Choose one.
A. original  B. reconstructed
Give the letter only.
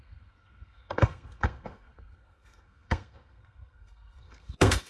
B